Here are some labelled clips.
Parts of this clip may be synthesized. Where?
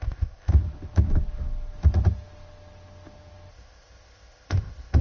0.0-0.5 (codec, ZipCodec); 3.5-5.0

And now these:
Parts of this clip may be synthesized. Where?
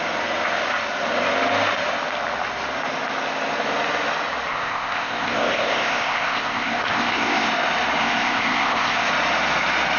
4.5-7.5 (codec, ZipCodec); 8.0-9.1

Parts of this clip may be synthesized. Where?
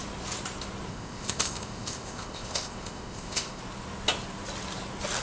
0.9-3.6 (codec, ZipCodec)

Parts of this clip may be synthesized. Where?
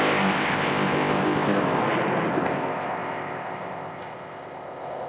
0.0-1.8 (codec, ZipCodec); 2.3-5.1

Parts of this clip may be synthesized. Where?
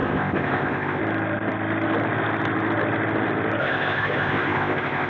0.0-1.0 (codec, ZipCodec); 3.6-5.1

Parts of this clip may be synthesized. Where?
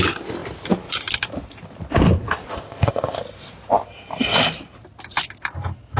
2.5-3.2 (codec, ZipCodec)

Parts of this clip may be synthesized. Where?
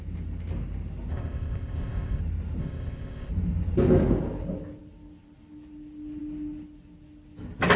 1.1-2.2 (codec, ZipCodec); 2.6-3.3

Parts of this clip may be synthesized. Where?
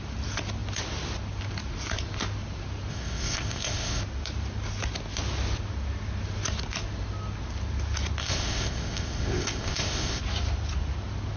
2.9-4.0 (codec, ZipCodec); 8.2-10.2